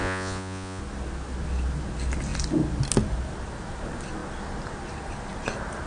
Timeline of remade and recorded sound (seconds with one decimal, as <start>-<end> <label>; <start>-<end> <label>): 0.0-0.8 remade; 0.8-5.9 recorded